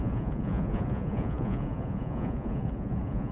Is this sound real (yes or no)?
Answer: no